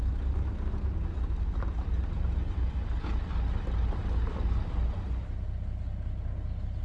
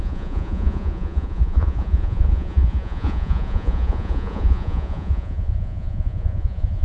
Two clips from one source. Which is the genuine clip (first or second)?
first